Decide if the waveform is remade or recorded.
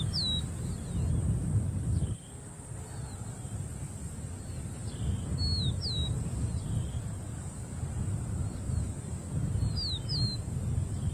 recorded